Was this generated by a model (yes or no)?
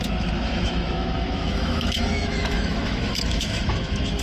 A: yes